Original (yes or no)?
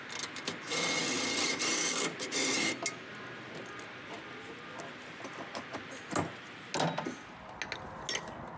yes